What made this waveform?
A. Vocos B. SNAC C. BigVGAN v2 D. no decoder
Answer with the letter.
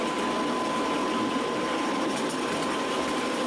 D